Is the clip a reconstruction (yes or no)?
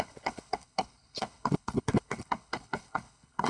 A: yes